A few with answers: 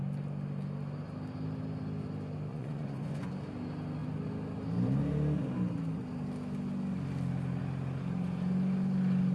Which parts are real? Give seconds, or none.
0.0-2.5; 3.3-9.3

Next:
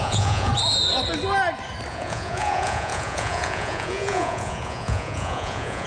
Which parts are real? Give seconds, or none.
0.5-1.9